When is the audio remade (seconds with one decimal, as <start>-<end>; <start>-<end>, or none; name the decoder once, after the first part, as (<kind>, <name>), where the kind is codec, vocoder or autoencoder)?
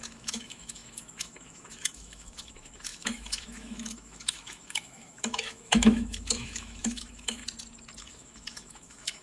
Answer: 0.0-7.4 (autoencoder, DAC-VAE); 8.0-9.2